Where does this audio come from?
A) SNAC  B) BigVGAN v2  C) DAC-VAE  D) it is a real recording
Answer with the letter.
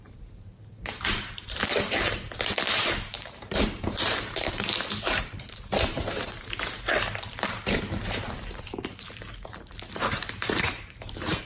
B